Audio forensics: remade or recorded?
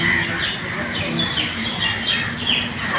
recorded